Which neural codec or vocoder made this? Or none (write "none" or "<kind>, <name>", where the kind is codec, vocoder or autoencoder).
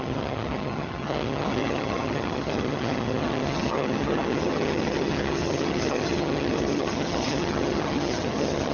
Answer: vocoder, HiFi-GAN